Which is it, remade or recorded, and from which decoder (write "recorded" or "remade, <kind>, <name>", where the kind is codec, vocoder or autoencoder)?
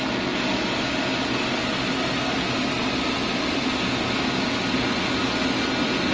recorded